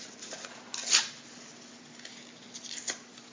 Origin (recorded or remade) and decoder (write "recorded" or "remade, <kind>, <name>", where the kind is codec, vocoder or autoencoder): recorded